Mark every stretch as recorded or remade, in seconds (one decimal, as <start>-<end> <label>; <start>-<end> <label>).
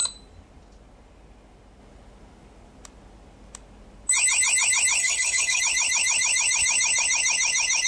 0.0-5.0 recorded; 5.0-5.6 remade; 5.6-7.9 recorded